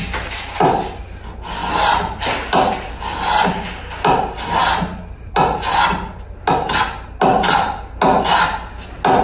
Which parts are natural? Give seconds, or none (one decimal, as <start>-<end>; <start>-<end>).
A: 0.0-9.2